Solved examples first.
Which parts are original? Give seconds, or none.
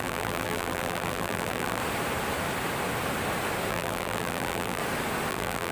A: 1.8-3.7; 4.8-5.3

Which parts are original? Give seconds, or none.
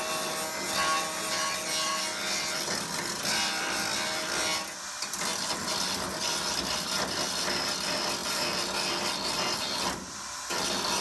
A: 0.0-11.0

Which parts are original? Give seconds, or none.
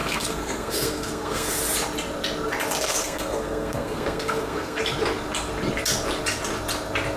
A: 1.6-3.0; 4.8-7.2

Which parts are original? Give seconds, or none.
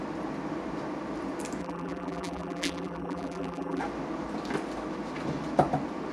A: 0.0-1.6; 3.8-6.1